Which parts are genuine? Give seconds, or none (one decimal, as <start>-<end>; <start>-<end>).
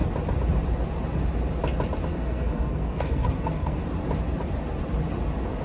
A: 0.0-2.1; 3.8-5.6